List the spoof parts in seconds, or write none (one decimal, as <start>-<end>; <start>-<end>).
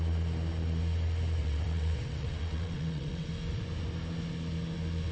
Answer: 1.4-3.3